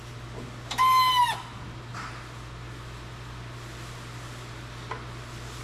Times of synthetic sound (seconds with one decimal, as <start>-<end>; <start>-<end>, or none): none